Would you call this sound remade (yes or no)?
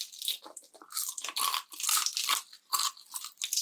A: no